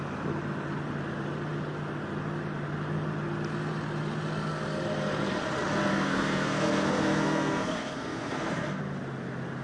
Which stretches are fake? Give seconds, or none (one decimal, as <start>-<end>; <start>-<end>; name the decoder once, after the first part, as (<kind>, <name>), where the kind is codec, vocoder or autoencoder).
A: 5.9-8.8 (codec, SNAC)